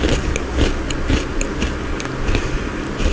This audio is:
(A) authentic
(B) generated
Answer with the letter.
A